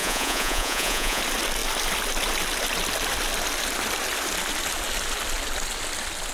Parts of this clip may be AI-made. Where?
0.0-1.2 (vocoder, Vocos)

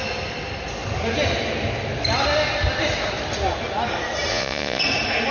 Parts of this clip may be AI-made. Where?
4.3-4.8 (vocoder, Vocos)

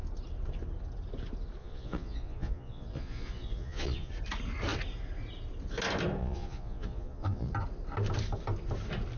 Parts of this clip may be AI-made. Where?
1.6-4.1 (vocoder, Vocos); 6.2-7.5

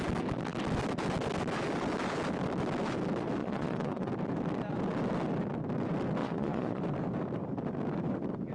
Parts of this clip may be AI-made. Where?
3.4-4.1 (vocoder, Vocos); 6.2-6.8

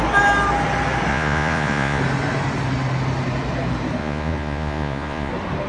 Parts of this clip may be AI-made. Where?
1.1-2.0 (vocoder, Vocos); 4.0-5.3